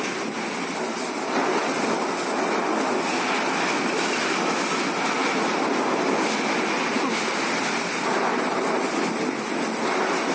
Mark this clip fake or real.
real